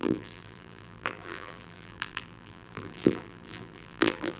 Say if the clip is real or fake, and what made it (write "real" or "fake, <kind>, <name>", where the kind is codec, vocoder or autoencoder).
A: fake, vocoder, BigVGAN v2